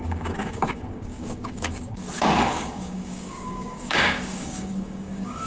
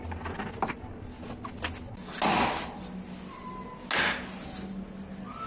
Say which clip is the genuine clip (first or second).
second